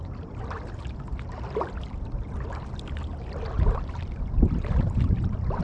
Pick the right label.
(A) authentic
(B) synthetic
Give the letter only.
A